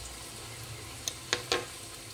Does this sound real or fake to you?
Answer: real